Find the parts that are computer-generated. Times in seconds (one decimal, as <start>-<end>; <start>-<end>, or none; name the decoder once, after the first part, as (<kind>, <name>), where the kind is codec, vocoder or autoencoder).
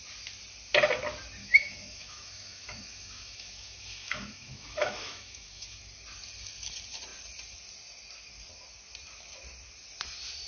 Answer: 1.4-5.8 (autoencoder, DAC-VAE)